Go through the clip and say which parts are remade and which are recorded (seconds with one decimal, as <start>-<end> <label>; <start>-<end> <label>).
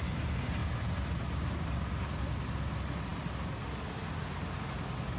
0.0-5.2 recorded